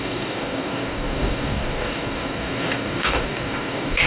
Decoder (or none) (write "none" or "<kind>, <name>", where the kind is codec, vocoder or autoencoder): codec, DAC